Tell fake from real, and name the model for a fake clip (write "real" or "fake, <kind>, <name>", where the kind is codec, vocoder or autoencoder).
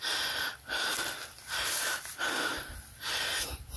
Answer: real